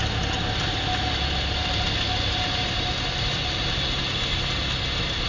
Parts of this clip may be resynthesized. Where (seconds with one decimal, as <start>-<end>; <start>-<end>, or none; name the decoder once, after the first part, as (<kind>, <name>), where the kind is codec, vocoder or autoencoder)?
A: none